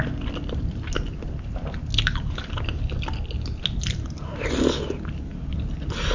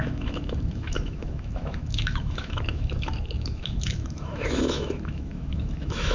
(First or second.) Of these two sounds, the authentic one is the first